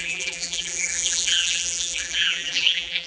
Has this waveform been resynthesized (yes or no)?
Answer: yes